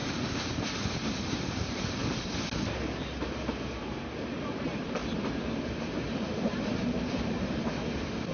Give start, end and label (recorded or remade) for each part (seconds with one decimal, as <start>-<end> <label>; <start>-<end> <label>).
0.0-2.0 remade; 2.0-3.5 recorded; 3.5-8.3 remade